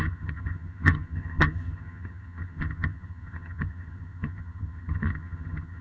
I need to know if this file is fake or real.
fake